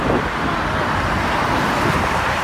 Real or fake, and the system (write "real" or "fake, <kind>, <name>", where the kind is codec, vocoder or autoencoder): real